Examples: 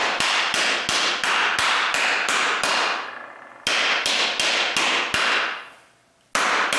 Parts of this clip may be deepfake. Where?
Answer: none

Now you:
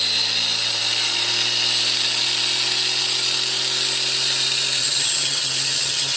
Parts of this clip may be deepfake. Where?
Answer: 4.8-6.2 (vocoder, HiFi-GAN)

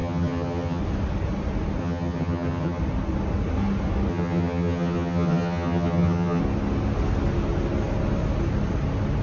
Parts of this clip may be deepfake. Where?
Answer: 0.0-0.8 (vocoder, HiFi-GAN); 1.8-2.8; 4.1-6.4

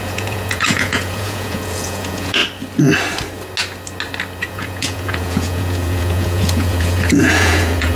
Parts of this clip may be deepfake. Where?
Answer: 0.0-2.4 (vocoder, Vocos); 4.5-8.0

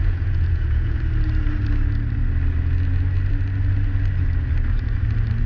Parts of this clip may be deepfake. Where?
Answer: 0.0-1.0 (vocoder, Vocos)

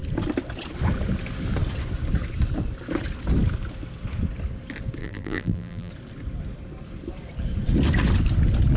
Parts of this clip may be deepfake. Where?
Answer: 5.0-5.9 (vocoder, BigVGAN v2)